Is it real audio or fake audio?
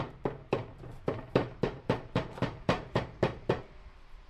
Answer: fake